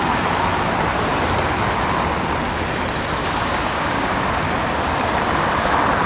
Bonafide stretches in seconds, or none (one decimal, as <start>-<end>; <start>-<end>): 0.0-3.2; 4.2-6.1